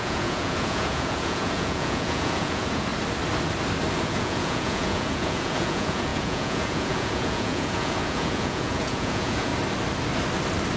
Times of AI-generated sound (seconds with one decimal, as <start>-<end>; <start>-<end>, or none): 0.0-2.9; 4.0-9.5